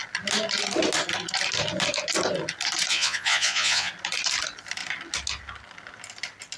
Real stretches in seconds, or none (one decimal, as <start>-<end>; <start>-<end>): 0.0-2.9; 3.9-6.6